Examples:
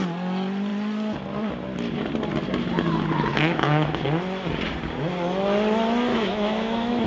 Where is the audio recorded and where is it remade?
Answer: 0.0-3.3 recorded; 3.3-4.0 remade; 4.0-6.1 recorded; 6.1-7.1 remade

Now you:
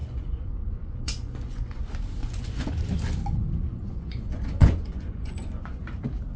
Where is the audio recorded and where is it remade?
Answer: 0.0-1.8 remade; 1.8-2.2 recorded; 2.2-2.7 remade; 2.7-3.7 recorded; 3.7-5.8 remade; 5.8-6.4 recorded

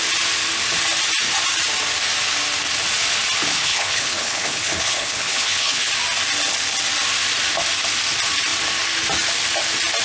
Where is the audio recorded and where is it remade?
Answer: 0.0-3.5 recorded; 3.5-5.9 remade; 5.9-10.0 recorded

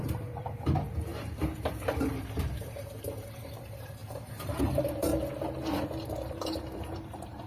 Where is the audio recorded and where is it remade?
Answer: 0.0-1.1 remade; 1.1-2.6 recorded; 2.6-5.1 remade; 5.1-6.1 recorded; 6.1-7.5 remade

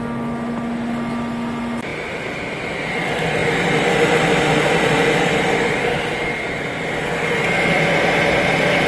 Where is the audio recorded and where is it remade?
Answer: 0.0-8.9 recorded

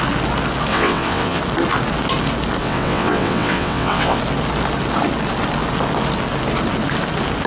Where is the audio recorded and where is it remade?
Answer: 0.0-0.7 recorded; 0.7-1.4 remade; 1.4-2.6 recorded; 2.6-4.2 remade; 4.2-7.5 recorded

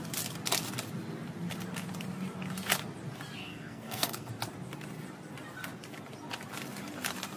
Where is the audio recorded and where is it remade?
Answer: 0.0-3.4 recorded; 3.4-4.3 remade; 4.3-7.4 recorded